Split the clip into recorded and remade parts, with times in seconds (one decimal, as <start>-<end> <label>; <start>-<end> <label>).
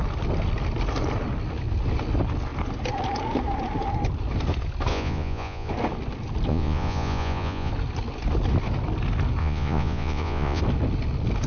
0.0-4.9 recorded; 4.9-5.7 remade; 5.7-6.5 recorded; 6.5-7.7 remade; 7.7-9.4 recorded; 9.4-10.6 remade; 10.6-11.5 recorded